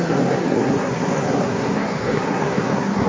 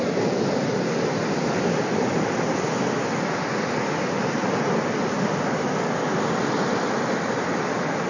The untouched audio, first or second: second